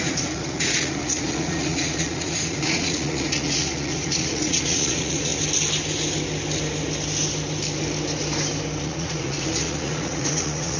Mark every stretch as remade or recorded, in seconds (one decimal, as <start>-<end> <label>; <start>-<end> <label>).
0.0-5.3 remade; 5.3-8.8 recorded; 8.8-10.8 remade